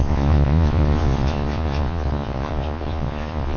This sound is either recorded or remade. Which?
remade